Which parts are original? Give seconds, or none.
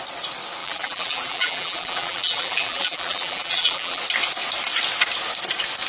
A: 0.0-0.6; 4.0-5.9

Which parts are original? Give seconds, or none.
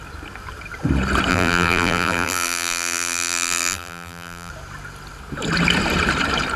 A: 0.0-1.3; 4.5-6.6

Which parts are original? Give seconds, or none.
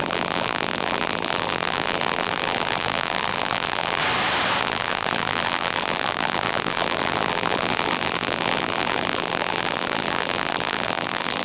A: 4.0-4.6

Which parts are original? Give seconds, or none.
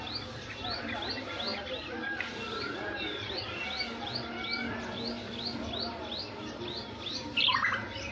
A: 0.0-1.5; 5.4-5.9; 7.2-8.1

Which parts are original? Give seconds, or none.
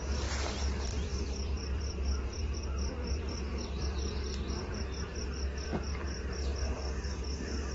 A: 0.0-0.9; 5.3-5.7; 6.9-7.7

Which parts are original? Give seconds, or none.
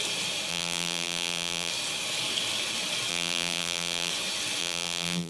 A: 0.0-0.5; 1.7-3.1; 4.1-4.6